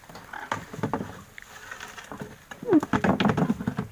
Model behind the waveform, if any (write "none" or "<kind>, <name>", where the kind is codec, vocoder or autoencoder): none